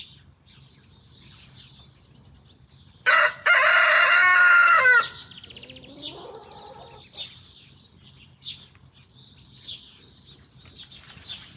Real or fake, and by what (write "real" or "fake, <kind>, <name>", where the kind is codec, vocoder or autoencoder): real